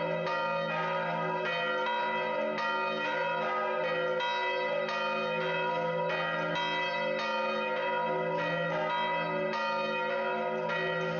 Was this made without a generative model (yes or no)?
yes